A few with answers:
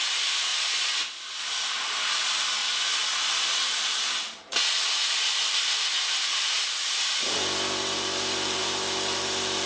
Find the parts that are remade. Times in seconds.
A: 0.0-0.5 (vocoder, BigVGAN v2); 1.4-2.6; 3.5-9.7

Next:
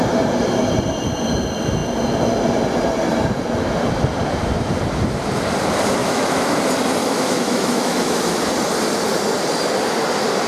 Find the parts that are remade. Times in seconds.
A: 6.0-6.6 (autoencoder, DAC-VAE); 7.0-8.4

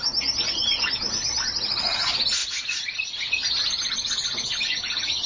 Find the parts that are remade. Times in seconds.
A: none

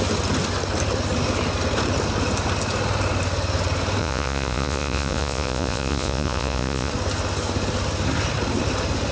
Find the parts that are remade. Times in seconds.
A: 4.0-6.9 (vocoder, Vocos)

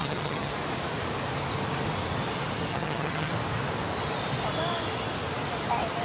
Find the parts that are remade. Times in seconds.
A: 0.0-0.5 (vocoder, HiFi-GAN); 2.7-3.3

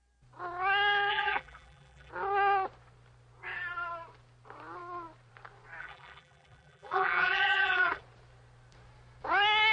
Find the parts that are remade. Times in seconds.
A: 1.1-2.1 (vocoder, BigVGAN v2); 5.8-8.0